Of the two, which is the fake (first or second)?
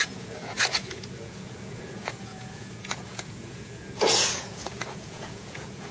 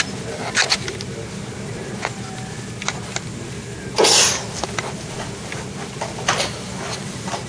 first